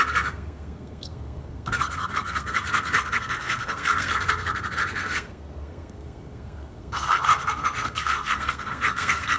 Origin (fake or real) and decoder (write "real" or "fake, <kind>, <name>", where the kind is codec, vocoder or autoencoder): fake, codec, SNAC